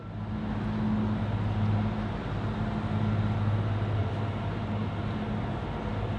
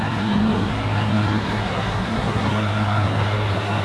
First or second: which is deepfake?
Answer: second